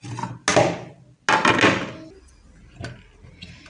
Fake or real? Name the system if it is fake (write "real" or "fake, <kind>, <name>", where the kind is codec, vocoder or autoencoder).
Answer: real